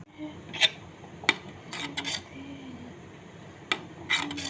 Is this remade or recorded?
recorded